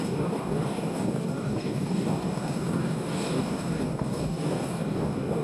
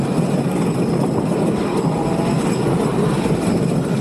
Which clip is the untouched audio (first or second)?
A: second